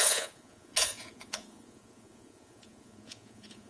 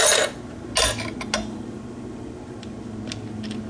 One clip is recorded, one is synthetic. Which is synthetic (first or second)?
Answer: first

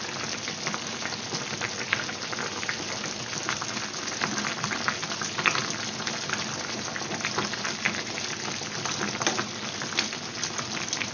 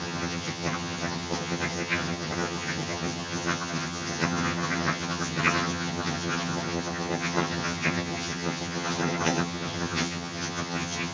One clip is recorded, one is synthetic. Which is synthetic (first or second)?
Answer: second